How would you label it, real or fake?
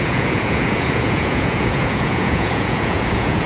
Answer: fake